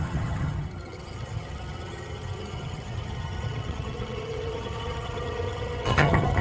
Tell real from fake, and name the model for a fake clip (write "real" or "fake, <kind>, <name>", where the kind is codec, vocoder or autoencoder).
fake, vocoder, HiFi-GAN